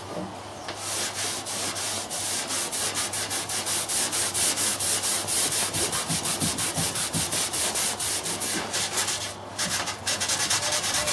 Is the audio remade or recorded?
recorded